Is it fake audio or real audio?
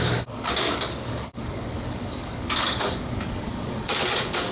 fake